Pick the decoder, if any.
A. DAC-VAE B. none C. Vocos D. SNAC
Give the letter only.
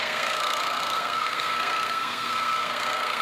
D